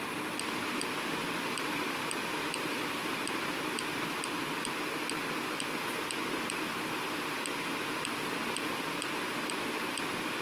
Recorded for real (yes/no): yes